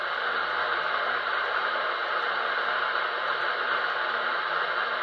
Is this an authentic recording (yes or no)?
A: yes